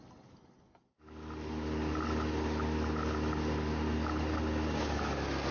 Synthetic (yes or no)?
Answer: no